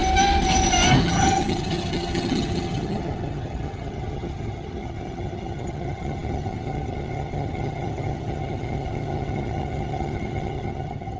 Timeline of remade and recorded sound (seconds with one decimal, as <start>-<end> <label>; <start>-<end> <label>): 0.0-1.0 recorded; 1.0-11.2 remade